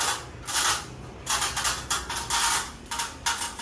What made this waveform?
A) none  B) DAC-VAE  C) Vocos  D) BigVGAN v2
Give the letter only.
A